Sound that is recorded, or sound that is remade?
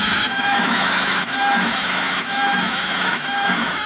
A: remade